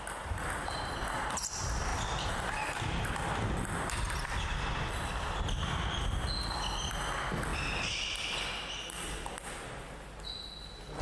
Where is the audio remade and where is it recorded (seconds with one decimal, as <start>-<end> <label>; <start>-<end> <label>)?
0.0-1.9 recorded; 1.9-3.1 remade; 3.1-11.0 recorded